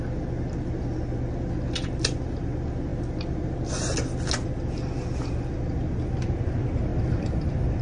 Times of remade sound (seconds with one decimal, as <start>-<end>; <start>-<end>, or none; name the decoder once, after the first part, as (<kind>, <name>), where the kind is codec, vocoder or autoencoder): none